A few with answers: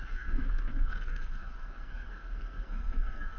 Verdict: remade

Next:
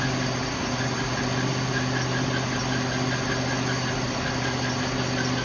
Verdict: recorded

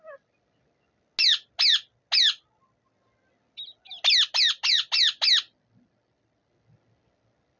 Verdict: recorded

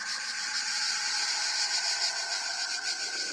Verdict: recorded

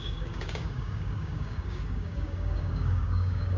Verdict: remade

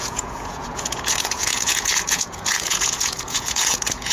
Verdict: remade